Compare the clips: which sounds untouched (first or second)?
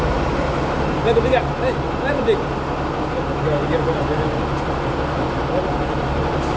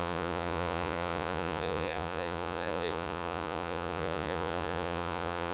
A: first